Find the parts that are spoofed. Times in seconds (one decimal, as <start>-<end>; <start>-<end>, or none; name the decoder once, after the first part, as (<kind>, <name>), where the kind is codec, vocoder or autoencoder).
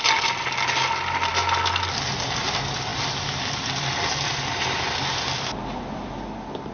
none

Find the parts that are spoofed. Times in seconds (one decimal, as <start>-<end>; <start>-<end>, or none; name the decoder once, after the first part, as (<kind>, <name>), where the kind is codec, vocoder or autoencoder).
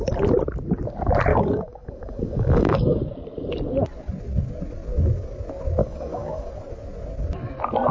1.3-3.1 (codec, DAC); 5.8-6.5